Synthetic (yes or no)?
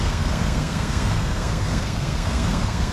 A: yes